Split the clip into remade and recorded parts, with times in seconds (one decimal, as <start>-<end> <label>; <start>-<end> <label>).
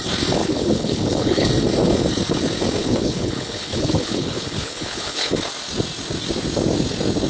0.0-0.4 recorded; 0.4-1.5 remade; 1.5-2.8 recorded; 2.8-5.3 remade; 5.3-7.3 recorded